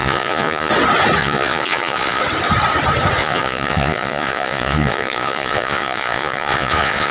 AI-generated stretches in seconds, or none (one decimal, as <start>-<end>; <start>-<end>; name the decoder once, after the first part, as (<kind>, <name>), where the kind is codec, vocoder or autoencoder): 0.0-0.7 (vocoder, Vocos); 1.2-2.2; 3.2-7.1